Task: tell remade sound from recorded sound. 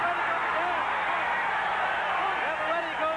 recorded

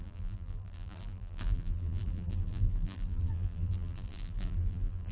remade